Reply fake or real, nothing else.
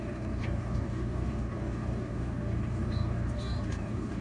fake